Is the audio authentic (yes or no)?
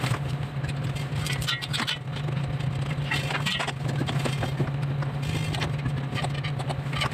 yes